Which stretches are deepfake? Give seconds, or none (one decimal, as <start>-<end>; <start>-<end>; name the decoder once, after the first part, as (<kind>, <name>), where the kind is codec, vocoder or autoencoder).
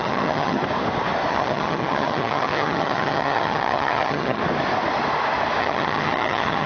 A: 0.0-0.6 (vocoder, HiFi-GAN); 1.3-4.4; 5.6-6.7